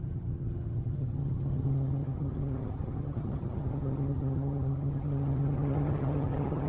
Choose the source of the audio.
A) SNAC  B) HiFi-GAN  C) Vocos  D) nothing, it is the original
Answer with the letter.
B